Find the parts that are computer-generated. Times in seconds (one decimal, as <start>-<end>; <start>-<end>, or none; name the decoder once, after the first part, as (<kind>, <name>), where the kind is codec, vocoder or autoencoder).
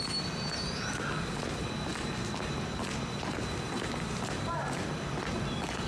none